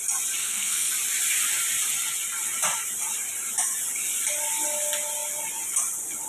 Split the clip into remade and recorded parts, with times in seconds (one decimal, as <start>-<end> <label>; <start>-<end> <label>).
0.0-0.4 recorded; 0.4-0.9 remade; 0.9-6.3 recorded